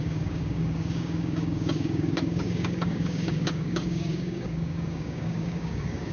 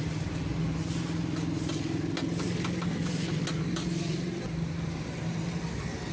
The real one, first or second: second